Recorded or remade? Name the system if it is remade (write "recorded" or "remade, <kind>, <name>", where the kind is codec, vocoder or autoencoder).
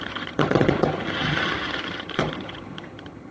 remade, vocoder, HiFi-GAN